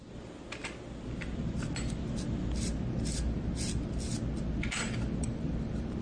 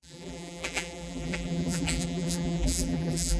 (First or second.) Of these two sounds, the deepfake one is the second